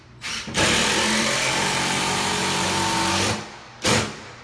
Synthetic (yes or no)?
yes